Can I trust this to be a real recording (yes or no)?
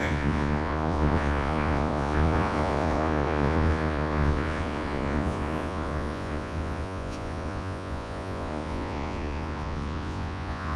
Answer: no